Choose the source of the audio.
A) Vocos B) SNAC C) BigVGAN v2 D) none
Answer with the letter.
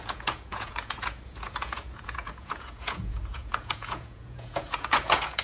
A